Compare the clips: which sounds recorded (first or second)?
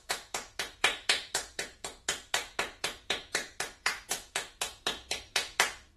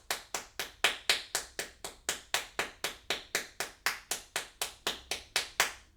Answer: second